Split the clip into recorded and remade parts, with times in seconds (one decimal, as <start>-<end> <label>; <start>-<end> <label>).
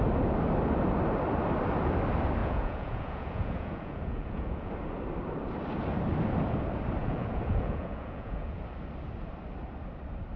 0.0-2.4 recorded; 2.4-4.7 remade; 4.7-7.0 recorded; 7.0-8.6 remade; 8.6-10.4 recorded